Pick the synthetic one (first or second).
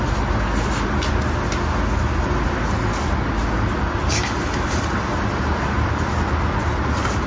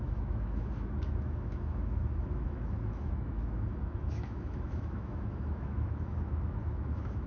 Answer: second